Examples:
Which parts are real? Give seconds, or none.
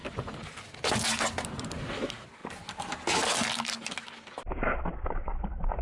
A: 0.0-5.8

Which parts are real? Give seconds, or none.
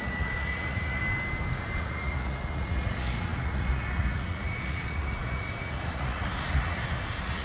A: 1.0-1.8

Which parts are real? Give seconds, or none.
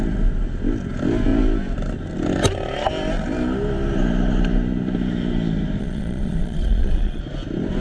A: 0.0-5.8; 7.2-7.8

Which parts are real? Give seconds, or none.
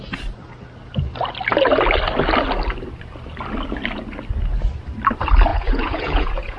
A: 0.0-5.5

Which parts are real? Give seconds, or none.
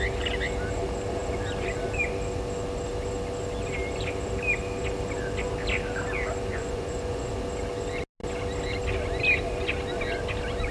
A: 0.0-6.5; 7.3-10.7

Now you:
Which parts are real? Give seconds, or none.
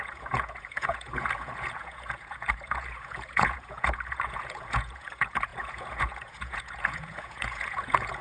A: none